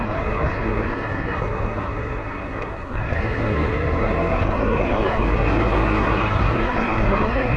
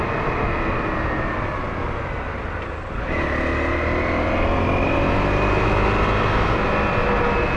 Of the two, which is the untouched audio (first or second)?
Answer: second